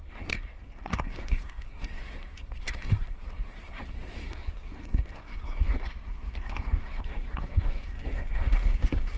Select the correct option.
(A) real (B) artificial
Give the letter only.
B